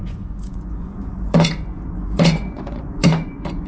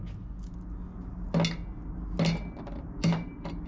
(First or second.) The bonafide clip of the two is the second